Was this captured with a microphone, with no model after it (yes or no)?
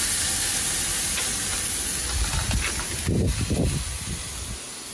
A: yes